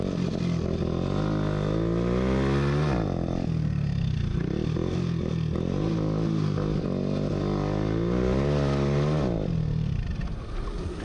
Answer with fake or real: real